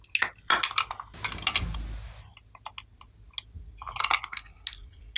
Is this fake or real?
real